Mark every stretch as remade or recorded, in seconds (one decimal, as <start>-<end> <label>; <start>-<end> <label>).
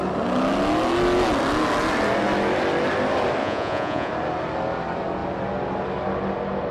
0.0-3.4 recorded; 3.4-4.1 remade; 4.1-6.7 recorded